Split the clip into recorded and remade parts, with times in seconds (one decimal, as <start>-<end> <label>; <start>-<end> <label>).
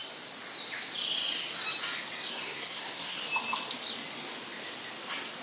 0.0-2.3 recorded; 2.3-3.2 remade; 3.2-5.4 recorded